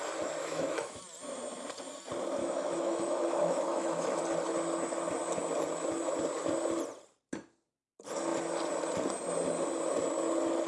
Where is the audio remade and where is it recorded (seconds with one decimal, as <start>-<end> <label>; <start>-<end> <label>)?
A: 0.0-0.4 recorded; 0.4-1.0 remade; 1.0-2.4 recorded; 2.4-4.2 remade; 4.2-10.7 recorded